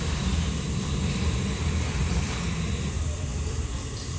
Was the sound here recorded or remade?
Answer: remade